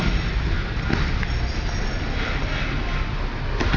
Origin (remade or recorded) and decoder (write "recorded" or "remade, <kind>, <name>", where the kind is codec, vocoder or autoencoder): recorded